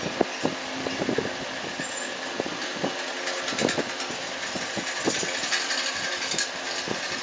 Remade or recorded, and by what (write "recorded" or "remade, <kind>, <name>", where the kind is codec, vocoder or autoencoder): recorded